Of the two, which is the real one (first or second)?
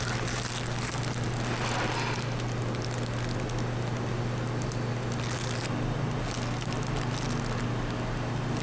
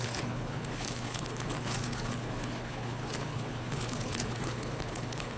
first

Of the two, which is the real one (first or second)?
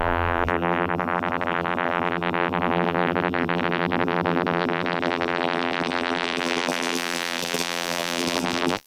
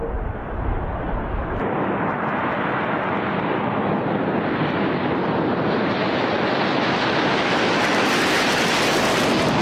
second